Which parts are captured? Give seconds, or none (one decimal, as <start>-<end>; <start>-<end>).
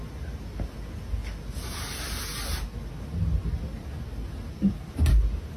0.0-5.6